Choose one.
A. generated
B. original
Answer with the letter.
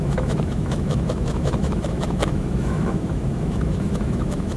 A